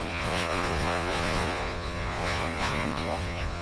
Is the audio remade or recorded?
remade